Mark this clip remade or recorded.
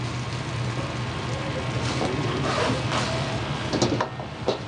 recorded